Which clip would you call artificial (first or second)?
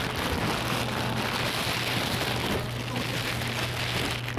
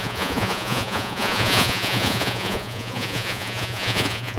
second